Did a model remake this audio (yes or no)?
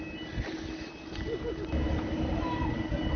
no